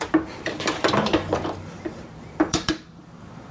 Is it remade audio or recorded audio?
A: remade